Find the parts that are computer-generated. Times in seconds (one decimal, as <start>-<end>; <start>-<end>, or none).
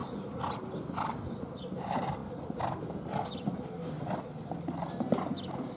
none